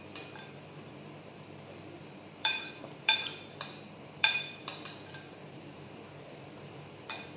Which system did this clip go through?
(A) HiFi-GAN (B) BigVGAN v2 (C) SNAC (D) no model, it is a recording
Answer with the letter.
B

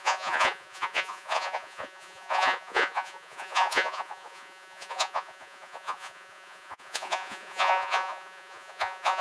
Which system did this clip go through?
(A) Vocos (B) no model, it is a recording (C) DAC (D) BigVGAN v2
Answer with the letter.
A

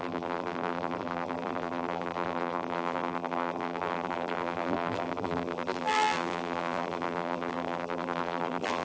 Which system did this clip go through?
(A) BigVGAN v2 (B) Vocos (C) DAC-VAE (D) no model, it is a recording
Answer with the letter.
A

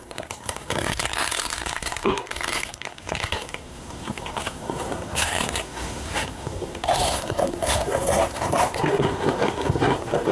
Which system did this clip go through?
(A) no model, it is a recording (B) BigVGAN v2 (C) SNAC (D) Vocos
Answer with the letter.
C